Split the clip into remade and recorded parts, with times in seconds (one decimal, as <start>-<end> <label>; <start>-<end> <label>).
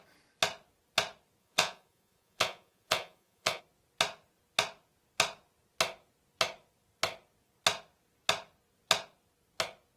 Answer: 0.0-1.4 recorded; 1.4-3.6 remade; 3.6-10.0 recorded